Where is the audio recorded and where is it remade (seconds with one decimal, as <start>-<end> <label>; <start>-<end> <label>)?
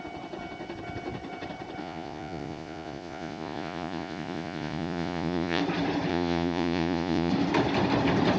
0.0-1.8 recorded; 1.8-5.6 remade; 5.6-6.1 recorded; 6.1-7.3 remade; 7.3-8.4 recorded